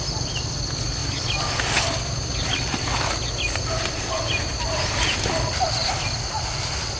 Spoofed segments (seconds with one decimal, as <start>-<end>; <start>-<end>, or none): none